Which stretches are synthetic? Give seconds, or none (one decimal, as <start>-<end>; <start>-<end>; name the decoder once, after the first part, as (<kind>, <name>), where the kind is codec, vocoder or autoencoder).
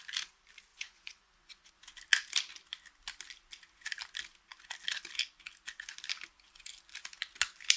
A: 0.7-1.7 (vocoder, Vocos)